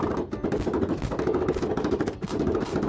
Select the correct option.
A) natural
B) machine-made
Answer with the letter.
A